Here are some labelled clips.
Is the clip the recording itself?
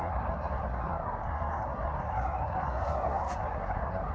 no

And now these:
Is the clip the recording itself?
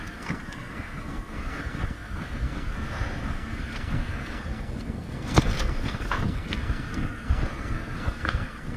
no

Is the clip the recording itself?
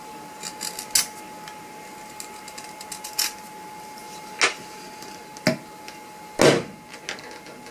yes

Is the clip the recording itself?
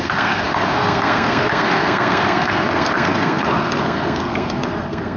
no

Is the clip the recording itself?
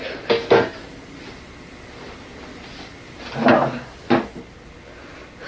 yes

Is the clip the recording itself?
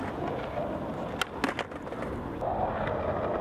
yes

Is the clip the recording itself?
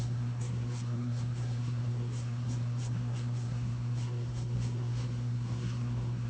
no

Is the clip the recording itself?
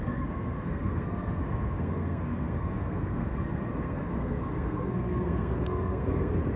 no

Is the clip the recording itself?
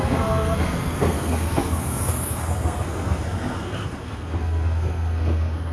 no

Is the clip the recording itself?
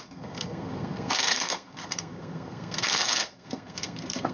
no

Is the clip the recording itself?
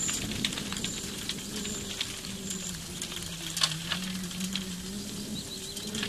yes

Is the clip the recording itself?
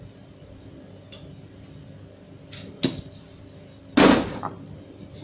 yes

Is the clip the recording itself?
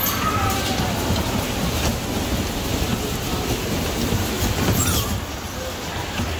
yes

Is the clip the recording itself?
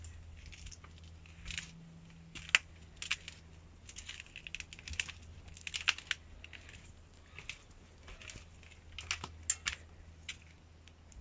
yes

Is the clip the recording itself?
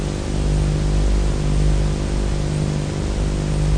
yes